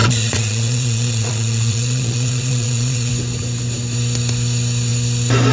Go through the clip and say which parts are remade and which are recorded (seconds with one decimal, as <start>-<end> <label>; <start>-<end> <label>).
0.0-3.1 remade; 3.1-5.5 recorded